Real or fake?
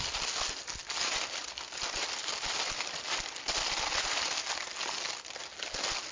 real